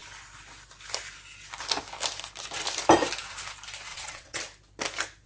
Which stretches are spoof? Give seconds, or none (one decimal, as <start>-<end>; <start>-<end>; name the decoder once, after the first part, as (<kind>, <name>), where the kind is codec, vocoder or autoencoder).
3.9-4.4 (vocoder, WaveNeXt)